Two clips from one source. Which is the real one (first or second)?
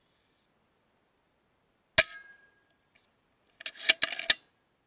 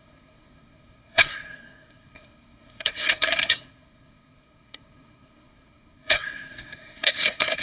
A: first